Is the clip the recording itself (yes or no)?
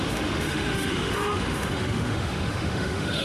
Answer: no